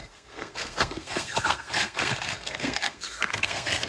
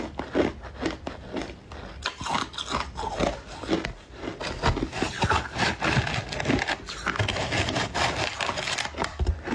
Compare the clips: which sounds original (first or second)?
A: second